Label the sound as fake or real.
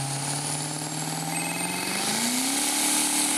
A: real